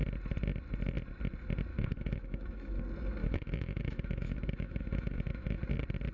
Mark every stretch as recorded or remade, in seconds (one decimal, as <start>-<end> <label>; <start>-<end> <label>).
0.0-1.7 recorded; 1.7-2.8 remade; 2.8-3.2 recorded; 3.2-5.6 remade; 5.6-6.1 recorded